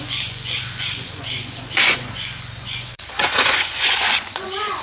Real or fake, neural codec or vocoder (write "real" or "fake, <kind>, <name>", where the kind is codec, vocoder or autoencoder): fake, vocoder, Vocos